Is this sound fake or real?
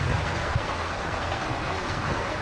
fake